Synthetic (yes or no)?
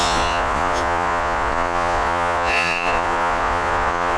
yes